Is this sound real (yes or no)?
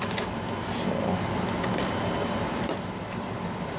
no